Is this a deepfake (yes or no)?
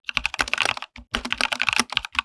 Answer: no